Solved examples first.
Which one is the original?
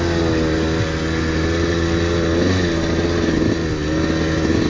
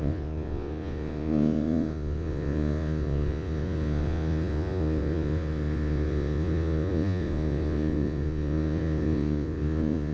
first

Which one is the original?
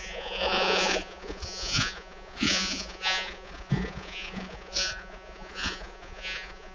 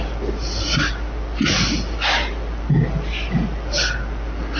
second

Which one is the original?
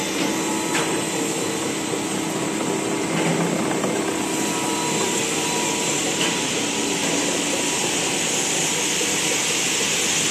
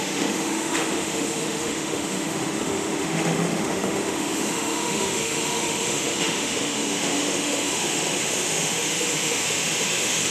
first